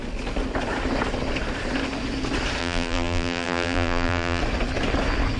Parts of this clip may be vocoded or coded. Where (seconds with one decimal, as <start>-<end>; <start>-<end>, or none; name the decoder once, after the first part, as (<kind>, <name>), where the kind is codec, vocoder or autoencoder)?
2.6-4.4 (vocoder, BigVGAN v2)